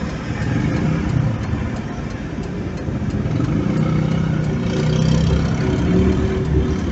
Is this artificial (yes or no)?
no